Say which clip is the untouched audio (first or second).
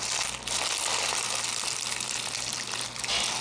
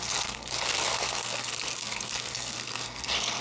first